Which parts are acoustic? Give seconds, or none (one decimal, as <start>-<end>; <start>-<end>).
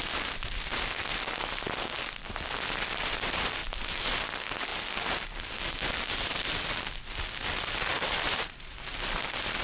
0.0-3.6; 4.2-7.9; 8.9-9.6